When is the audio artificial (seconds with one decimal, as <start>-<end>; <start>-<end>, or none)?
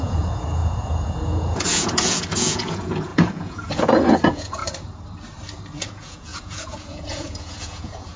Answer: 0.0-4.6; 5.8-8.2